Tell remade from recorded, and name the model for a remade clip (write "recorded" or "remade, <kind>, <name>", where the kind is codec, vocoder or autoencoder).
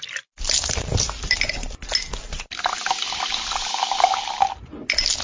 recorded